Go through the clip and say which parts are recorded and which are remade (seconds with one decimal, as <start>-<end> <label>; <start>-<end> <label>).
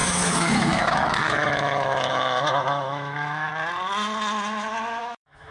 0.0-3.5 remade; 3.5-5.0 recorded; 5.0-5.5 remade